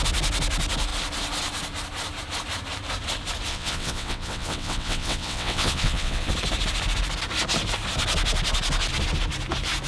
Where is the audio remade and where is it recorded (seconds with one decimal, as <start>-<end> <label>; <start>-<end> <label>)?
0.0-3.5 recorded; 3.5-6.3 remade; 6.3-9.9 recorded